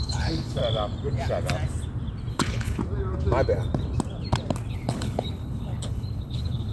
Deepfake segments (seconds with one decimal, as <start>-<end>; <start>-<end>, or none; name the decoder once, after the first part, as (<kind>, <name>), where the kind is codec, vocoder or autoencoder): 0.0-0.6 (codec, HILCodec); 2.3-2.8; 4.7-6.7